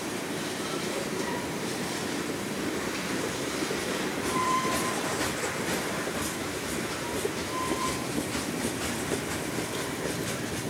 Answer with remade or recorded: remade